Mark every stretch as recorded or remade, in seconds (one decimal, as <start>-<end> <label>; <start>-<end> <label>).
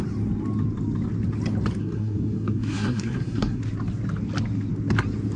0.0-1.8 recorded; 1.8-3.6 remade; 3.6-5.4 recorded